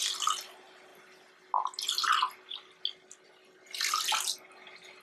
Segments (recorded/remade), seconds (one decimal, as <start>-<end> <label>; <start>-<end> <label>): 0.0-5.0 recorded